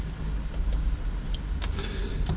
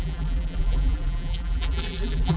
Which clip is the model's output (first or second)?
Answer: second